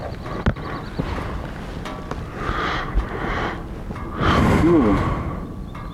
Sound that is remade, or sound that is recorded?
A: recorded